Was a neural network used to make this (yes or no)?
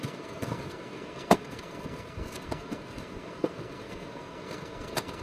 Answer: yes